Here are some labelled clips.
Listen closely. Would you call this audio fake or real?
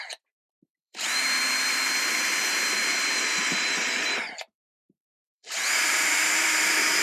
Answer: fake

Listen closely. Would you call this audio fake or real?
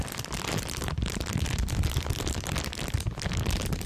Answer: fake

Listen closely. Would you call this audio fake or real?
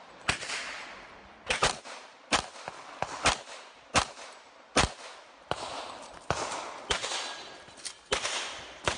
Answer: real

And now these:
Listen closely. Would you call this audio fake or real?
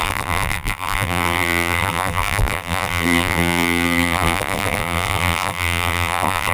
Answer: fake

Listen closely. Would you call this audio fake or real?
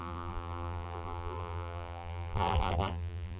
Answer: fake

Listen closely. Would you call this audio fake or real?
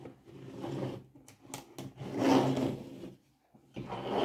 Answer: real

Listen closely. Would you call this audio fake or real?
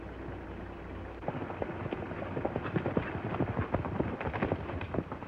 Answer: real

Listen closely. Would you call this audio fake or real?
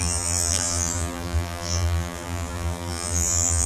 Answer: fake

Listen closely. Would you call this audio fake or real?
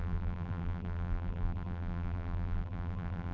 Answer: fake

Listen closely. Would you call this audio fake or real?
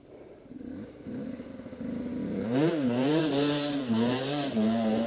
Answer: fake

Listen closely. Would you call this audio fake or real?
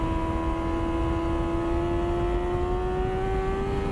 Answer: real